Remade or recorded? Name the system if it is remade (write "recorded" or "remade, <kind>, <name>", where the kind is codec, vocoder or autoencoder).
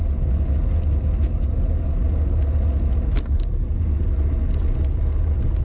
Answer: recorded